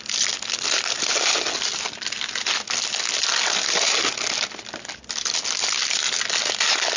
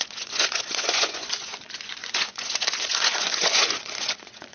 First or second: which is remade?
second